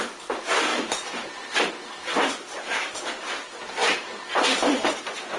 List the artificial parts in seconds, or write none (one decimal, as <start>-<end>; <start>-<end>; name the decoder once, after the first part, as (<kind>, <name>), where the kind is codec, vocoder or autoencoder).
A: 0.7-1.9 (vocoder, BigVGAN v2)